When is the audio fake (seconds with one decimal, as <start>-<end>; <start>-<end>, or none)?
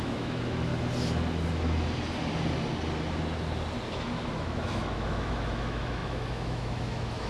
0.0-0.7; 3.9-7.3